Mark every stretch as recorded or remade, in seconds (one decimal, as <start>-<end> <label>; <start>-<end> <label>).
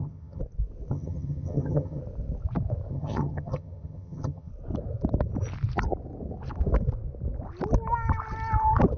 0.0-0.4 remade; 0.4-0.9 recorded; 0.9-2.0 remade; 2.0-2.9 recorded; 2.9-4.5 remade; 4.5-9.0 recorded